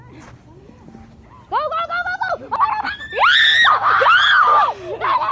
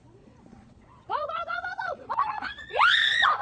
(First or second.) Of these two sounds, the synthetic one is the second